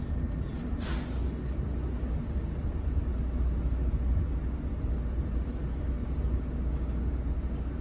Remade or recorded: recorded